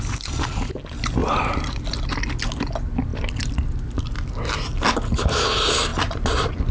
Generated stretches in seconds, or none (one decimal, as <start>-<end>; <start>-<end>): 1.2-2.1